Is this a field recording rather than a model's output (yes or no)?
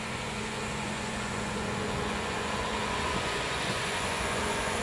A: no